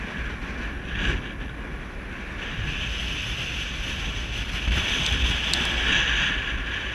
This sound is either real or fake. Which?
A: real